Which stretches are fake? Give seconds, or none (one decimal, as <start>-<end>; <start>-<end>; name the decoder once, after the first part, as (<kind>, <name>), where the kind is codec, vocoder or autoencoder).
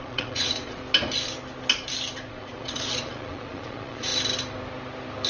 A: 0.0-0.8 (vocoder, Vocos); 2.3-4.1